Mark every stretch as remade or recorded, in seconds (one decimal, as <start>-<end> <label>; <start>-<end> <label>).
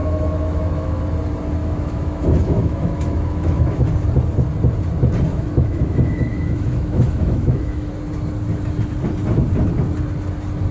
0.0-1.0 remade; 1.0-1.6 recorded; 1.6-3.9 remade; 3.9-5.3 recorded; 5.3-7.9 remade; 7.9-10.7 recorded